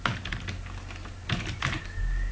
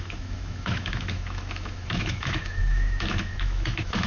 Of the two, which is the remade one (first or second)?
second